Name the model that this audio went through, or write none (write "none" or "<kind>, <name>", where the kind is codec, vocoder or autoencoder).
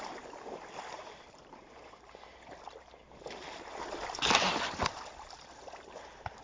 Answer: none